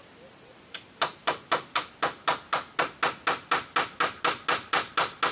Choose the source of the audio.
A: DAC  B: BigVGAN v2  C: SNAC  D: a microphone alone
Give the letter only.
D